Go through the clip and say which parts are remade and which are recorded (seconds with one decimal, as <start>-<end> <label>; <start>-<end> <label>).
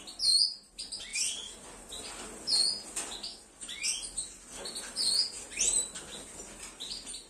0.0-7.3 recorded